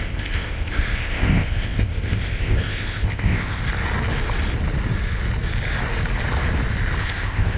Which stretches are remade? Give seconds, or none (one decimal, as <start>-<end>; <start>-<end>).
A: 0.0-3.6; 7.0-7.6